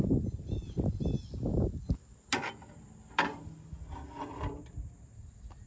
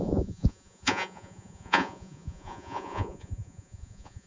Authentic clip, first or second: first